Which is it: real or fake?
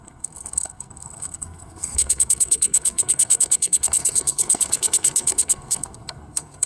fake